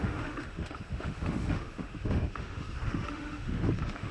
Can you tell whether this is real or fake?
fake